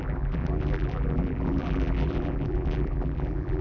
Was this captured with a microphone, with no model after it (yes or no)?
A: no